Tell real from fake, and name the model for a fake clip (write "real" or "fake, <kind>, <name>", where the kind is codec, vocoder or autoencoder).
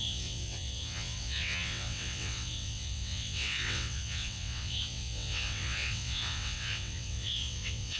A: fake, vocoder, WaveNeXt